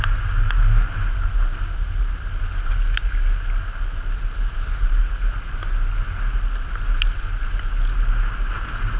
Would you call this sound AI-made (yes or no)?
no